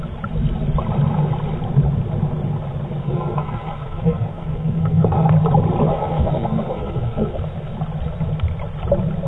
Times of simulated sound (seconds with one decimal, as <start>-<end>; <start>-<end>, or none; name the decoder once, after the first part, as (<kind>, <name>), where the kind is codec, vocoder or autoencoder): 3.0-5.3 (codec, SNAC); 5.9-7.4